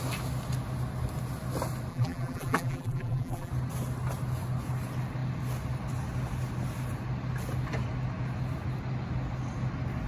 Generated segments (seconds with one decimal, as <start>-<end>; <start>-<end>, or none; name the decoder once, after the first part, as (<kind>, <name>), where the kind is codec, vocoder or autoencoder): 1.9-3.5 (vocoder, BigVGAN v2)

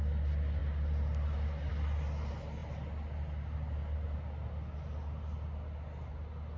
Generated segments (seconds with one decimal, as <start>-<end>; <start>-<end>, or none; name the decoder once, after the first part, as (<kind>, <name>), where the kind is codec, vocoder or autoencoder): none

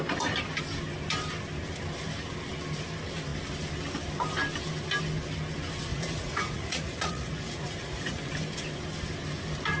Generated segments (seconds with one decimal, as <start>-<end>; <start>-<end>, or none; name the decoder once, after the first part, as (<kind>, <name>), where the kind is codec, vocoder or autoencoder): 5.9-8.3 (vocoder, Vocos)

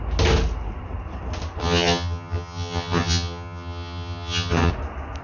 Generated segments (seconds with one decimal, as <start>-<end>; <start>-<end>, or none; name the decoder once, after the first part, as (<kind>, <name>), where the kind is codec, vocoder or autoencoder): 1.6-4.7 (vocoder, HiFi-GAN)